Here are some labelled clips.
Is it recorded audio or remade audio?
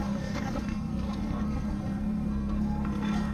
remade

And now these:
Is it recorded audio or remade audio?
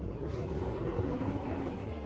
remade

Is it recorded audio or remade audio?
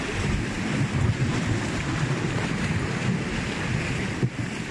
remade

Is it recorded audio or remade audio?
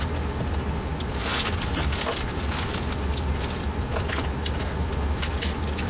recorded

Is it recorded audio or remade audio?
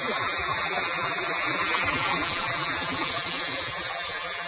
remade